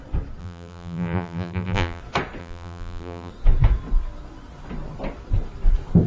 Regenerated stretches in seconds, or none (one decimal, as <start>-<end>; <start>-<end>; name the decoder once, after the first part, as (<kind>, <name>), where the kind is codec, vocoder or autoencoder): 0.4-2.0 (vocoder, BigVGAN v2); 2.4-3.3